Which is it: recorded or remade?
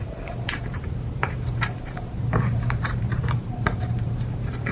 remade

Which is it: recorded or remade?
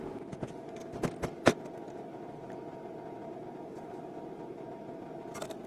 recorded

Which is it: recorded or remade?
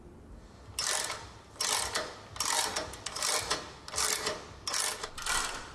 recorded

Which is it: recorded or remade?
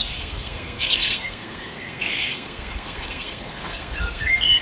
remade